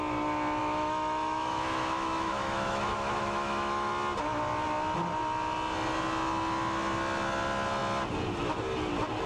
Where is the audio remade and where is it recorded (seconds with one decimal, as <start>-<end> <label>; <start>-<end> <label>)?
0.0-0.6 recorded; 0.6-3.9 remade; 3.9-9.3 recorded